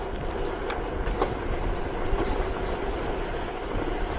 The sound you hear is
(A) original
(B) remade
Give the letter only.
A